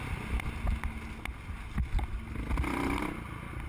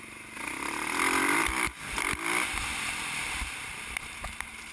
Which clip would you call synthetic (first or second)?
second